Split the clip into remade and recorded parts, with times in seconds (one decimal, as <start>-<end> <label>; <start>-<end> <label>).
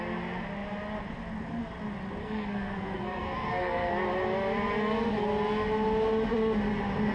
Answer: 0.0-2.2 recorded; 2.2-3.9 remade; 3.9-7.1 recorded